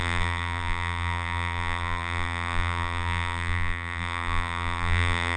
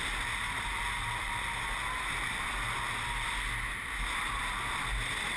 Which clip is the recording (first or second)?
second